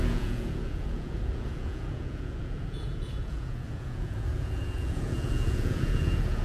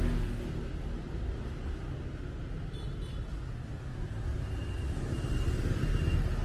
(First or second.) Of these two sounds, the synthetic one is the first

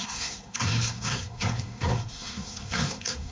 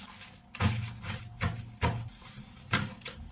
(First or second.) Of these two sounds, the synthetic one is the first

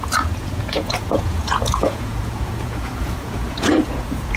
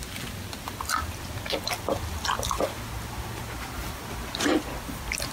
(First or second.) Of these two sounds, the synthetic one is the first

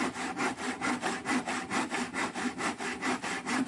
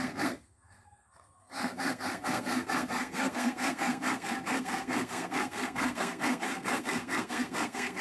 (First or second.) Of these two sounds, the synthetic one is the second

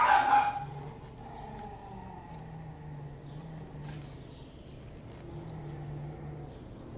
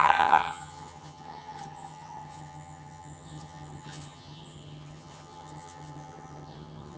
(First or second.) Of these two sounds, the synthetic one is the second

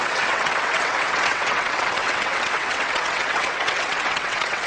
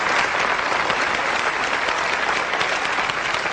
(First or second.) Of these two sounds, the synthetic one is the first